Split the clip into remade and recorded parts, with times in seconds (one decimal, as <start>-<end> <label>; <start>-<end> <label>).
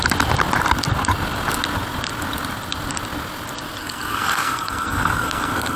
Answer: 0.0-3.8 recorded; 3.8-5.8 remade